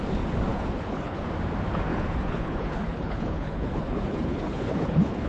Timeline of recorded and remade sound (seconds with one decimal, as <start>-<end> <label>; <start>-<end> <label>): 0.0-0.5 recorded; 0.5-1.3 remade; 1.3-1.9 recorded; 1.9-5.3 remade